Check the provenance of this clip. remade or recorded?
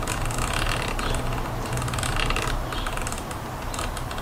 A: recorded